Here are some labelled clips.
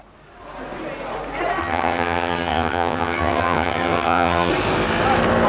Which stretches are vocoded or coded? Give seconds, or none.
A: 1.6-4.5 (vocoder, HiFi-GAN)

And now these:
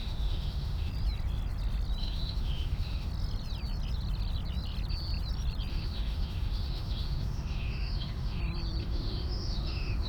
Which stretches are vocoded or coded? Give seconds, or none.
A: 0.0-0.9 (autoencoder, DAC-VAE); 2.0-3.1; 5.7-8.4; 8.8-10.1

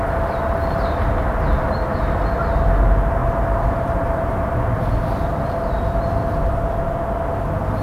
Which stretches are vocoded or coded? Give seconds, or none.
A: 3.2-4.8 (vocoder, BigVGAN v2)

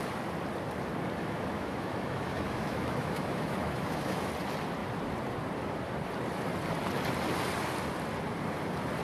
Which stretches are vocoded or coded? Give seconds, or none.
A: 1.2-4.3 (autoencoder, DAC-VAE)

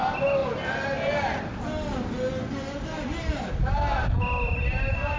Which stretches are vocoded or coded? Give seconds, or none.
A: none

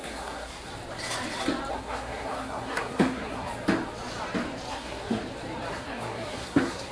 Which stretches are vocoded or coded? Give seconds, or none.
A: 0.0-0.7 (codec, SNAC); 1.7-3.5; 4.7-5.2; 5.7-6.9

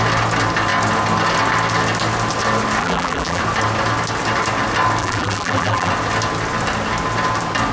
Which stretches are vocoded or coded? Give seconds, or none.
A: 2.8-3.4 (vocoder, BigVGAN v2); 5.0-5.9